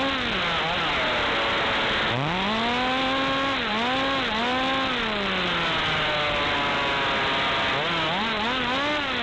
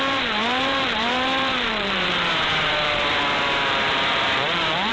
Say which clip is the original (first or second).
first